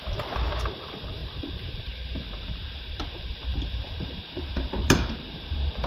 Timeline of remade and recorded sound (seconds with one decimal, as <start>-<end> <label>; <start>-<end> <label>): 0.0-5.9 remade